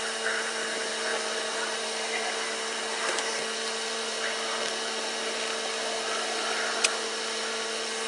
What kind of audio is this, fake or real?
real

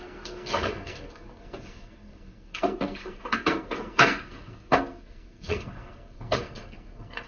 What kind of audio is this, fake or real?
fake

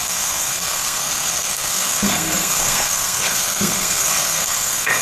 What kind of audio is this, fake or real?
fake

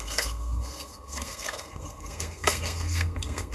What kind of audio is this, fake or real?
fake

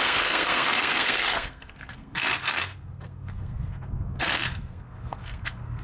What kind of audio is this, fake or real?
fake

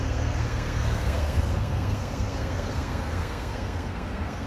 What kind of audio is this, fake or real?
fake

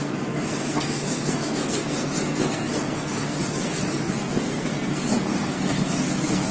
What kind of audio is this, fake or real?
fake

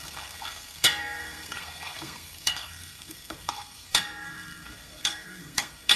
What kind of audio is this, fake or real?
fake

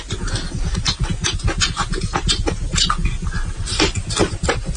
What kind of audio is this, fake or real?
real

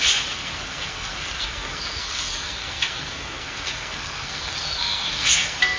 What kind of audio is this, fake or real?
fake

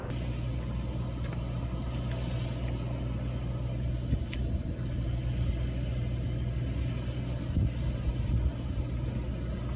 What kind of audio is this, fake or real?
real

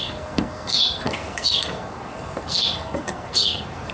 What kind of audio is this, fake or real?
fake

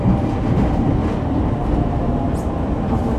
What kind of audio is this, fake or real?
real